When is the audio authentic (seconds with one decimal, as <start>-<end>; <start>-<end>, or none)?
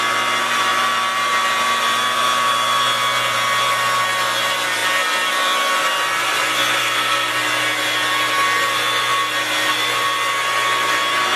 0.0-6.8; 7.3-11.4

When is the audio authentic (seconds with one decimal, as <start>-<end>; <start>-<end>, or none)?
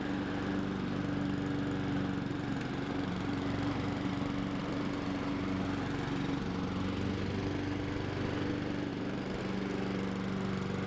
0.0-2.3; 4.1-4.6; 5.3-8.9; 9.4-10.9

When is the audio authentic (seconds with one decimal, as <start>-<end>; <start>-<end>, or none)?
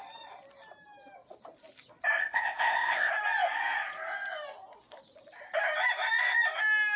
0.0-2.2; 3.1-7.0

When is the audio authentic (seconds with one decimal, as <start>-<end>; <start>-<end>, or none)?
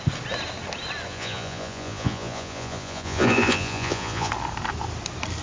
0.0-1.1; 4.3-5.4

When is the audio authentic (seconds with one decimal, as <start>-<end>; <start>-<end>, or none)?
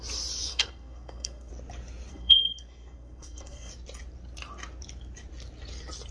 0.0-0.5; 1.5-2.1; 3.7-6.1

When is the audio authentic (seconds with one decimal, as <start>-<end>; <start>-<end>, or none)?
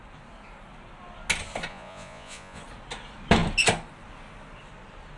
0.0-1.7; 2.6-5.2